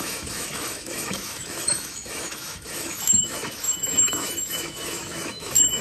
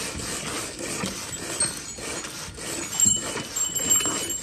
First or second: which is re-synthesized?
first